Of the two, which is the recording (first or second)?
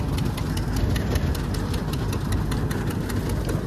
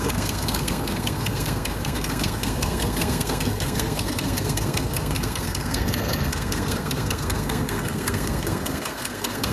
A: first